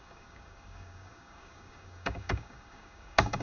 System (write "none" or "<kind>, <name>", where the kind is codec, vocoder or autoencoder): codec, DAC